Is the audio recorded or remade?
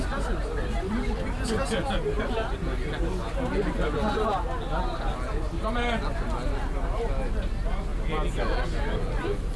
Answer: recorded